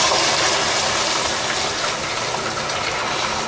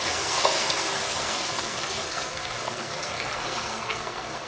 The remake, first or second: second